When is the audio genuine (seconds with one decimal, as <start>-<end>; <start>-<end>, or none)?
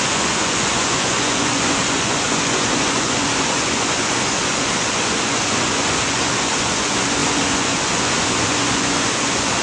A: none